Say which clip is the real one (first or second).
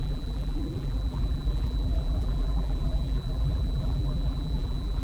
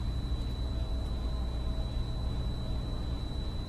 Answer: second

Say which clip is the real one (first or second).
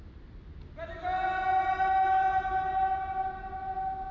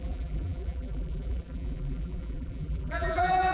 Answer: first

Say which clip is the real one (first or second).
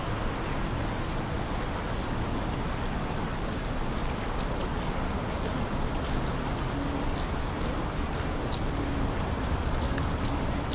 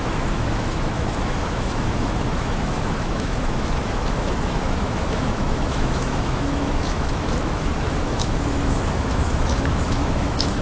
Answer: first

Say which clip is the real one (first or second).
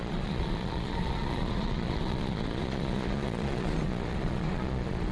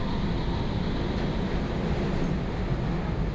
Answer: second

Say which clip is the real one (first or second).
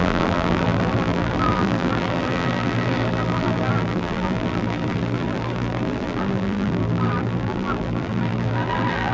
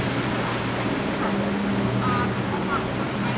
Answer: second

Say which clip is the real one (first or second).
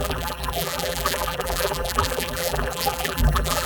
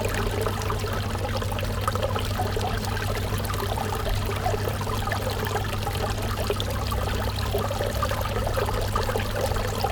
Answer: second